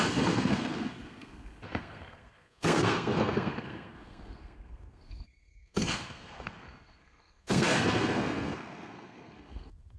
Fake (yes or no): yes